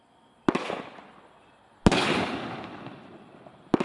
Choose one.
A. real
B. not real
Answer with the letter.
A